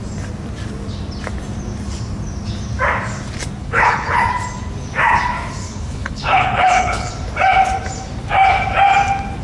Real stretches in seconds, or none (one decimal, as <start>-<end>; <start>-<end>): 0.0-3.6; 4.2-5.6; 7.1-9.4